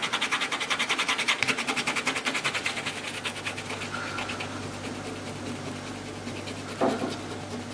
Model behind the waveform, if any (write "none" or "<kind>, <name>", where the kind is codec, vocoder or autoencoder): none